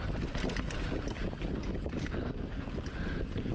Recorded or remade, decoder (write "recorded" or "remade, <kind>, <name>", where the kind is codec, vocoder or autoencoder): recorded